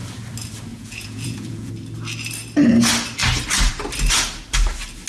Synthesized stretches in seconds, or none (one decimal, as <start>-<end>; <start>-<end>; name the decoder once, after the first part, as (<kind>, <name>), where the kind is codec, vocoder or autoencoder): 0.7-1.7 (vocoder, Vocos)